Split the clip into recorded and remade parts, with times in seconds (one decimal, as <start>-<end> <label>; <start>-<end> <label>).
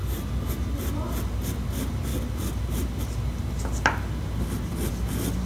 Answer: 0.0-5.5 recorded